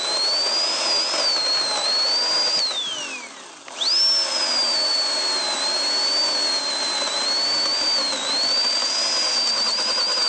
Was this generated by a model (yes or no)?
no